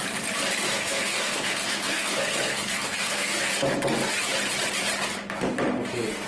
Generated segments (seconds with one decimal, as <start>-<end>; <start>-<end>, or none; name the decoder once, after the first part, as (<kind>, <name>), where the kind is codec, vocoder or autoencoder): 0.7-3.5 (codec, SNAC)

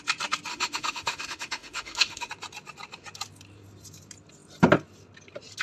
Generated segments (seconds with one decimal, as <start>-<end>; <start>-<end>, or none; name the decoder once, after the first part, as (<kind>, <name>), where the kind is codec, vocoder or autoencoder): 0.5-2.3 (autoencoder, DAC-VAE)

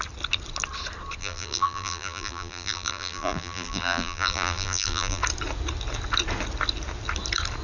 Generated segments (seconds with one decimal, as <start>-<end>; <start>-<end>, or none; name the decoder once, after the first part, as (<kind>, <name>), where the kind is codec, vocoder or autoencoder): 1.2-5.2 (vocoder, BigVGAN v2)

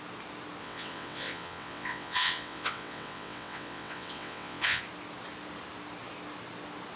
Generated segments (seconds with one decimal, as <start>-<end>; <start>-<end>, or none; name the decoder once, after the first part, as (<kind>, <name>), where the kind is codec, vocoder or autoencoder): 0.6-4.8 (vocoder, WaveNeXt)

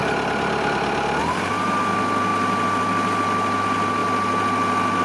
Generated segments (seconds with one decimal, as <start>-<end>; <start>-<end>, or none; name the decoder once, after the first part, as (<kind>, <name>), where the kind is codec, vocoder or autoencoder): none

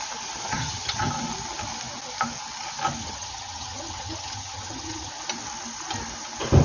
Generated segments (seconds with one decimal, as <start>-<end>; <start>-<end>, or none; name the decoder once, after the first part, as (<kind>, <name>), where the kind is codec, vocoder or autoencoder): 0.5-1.1 (vocoder, HiFi-GAN); 3.0-5.1

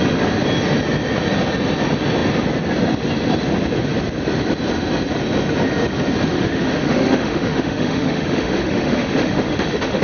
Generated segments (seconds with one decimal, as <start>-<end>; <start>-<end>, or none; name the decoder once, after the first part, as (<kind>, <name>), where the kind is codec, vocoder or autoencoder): 6.3-10.0 (autoencoder, DAC-VAE)

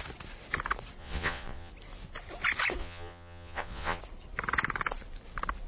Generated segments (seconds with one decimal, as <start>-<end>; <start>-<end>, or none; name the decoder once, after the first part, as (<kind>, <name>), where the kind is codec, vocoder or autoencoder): 1.0-1.7 (vocoder, Vocos); 2.8-4.0